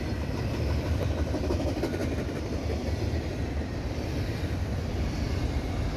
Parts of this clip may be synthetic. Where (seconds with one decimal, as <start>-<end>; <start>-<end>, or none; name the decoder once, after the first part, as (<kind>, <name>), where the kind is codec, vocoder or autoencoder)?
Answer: 0.0-6.0 (vocoder, BigVGAN v2)